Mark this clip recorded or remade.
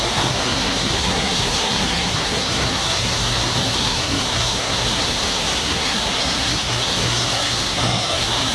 remade